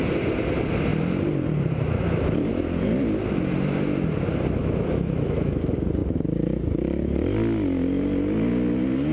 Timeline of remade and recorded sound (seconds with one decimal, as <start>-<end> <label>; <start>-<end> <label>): 0.0-4.6 recorded; 4.6-5.6 remade; 5.6-9.1 recorded